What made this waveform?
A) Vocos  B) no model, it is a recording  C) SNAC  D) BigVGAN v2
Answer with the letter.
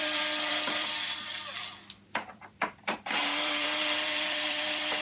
D